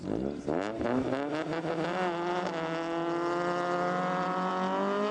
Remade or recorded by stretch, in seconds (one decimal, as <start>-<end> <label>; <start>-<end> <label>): 0.0-5.1 recorded